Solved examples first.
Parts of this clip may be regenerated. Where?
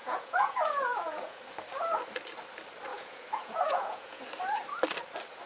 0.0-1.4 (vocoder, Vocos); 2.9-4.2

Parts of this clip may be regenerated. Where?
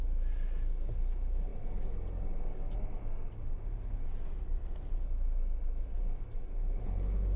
none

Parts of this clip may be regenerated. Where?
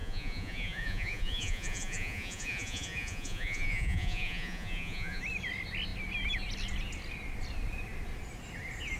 0.0-5.2 (vocoder, Vocos)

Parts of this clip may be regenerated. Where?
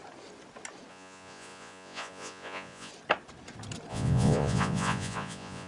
0.9-2.9 (vocoder, Vocos); 3.9-5.7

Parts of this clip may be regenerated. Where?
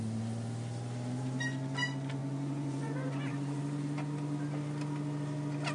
2.2-3.6 (vocoder, Vocos)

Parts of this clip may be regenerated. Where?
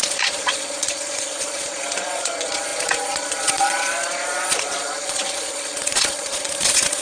0.0-7.0 (vocoder, Vocos)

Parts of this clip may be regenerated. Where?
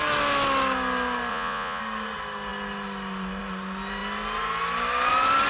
1.3-1.8 (vocoder, Vocos)